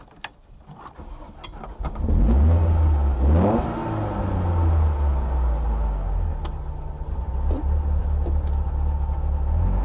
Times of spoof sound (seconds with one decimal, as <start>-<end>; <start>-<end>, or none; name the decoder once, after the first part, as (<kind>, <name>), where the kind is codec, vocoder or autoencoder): none